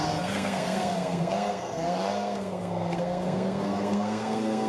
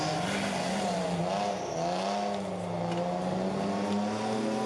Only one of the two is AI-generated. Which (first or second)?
first